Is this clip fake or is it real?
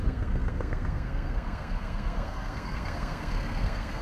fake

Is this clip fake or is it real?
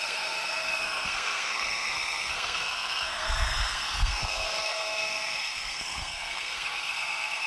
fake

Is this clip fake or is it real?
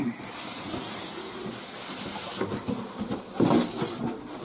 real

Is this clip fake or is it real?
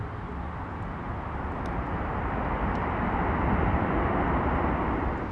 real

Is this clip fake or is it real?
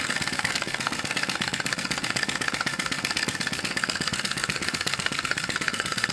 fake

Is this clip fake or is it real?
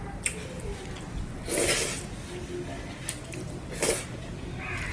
real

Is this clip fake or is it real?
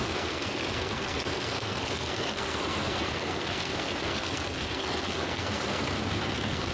fake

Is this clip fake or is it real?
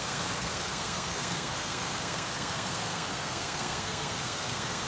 fake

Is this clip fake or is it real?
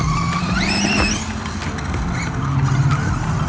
real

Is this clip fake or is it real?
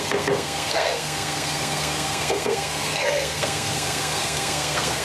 fake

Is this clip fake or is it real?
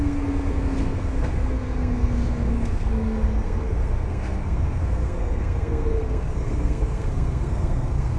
fake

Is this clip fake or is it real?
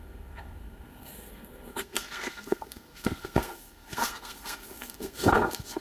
fake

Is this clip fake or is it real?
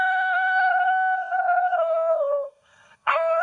fake